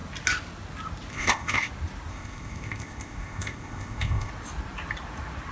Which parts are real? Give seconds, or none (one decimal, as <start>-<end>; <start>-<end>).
0.0-1.1; 1.7-2.1; 4.3-5.5